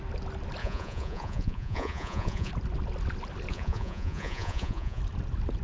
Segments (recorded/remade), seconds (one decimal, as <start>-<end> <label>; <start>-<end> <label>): 0.0-0.6 recorded; 0.6-2.5 remade; 2.5-3.5 recorded; 3.5-5.0 remade; 5.0-5.6 recorded